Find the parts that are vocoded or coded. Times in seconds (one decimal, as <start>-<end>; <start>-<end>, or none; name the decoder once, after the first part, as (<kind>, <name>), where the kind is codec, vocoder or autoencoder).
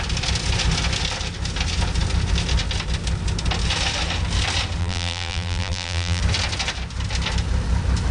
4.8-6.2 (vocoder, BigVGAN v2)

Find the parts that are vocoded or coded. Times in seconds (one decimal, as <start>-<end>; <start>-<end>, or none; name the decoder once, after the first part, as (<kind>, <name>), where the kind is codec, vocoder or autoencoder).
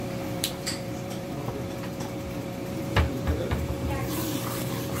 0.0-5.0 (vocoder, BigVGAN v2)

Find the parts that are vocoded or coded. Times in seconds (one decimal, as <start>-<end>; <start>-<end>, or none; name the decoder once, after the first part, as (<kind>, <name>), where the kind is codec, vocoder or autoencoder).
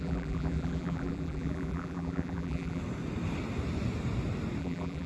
0.0-2.8 (vocoder, BigVGAN v2); 4.6-5.1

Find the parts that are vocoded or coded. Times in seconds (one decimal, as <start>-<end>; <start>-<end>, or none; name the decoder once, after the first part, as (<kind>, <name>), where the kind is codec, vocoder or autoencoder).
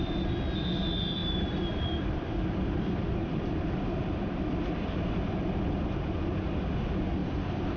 1.2-5.9 (vocoder, BigVGAN v2); 7.2-7.8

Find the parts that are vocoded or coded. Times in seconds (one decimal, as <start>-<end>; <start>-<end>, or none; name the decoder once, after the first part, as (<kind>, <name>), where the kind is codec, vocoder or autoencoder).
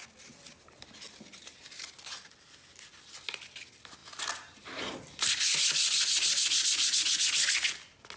none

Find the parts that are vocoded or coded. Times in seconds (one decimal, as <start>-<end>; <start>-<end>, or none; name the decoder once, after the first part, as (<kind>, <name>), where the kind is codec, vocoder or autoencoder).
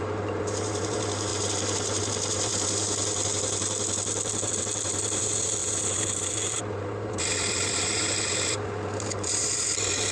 0.0-10.1 (vocoder, BigVGAN v2)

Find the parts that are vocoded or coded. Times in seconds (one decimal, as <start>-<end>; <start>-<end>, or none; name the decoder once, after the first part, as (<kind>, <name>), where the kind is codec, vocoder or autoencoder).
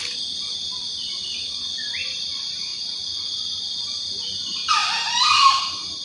0.8-1.5 (vocoder, BigVGAN v2); 4.8-6.0